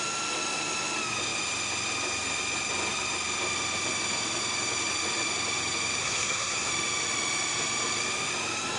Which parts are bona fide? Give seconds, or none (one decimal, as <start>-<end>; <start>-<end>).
0.0-6.0; 6.7-8.8